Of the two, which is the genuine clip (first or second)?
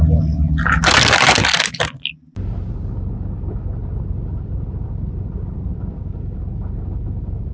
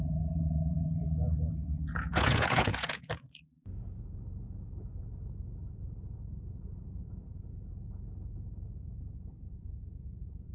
first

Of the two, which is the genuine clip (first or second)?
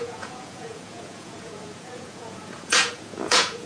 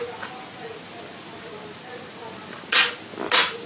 second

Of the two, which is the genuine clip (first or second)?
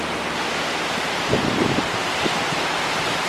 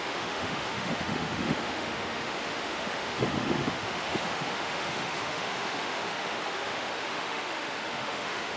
first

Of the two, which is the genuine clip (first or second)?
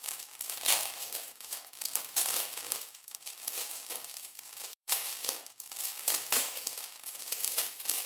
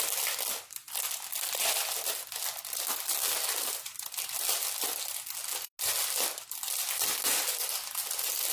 second